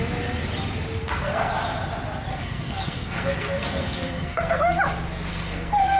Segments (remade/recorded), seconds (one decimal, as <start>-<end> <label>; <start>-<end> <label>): 0.0-1.0 recorded; 1.0-1.5 remade; 1.5-2.3 recorded; 2.3-4.8 remade; 4.8-5.3 recorded; 5.3-6.0 remade